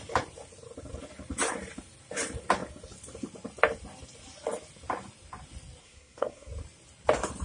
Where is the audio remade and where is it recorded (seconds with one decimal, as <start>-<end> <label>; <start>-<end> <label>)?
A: 0.0-5.8 recorded; 5.8-6.5 remade; 6.5-7.4 recorded